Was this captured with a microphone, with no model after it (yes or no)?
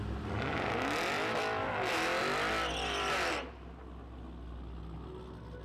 yes